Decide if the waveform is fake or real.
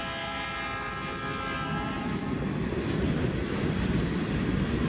real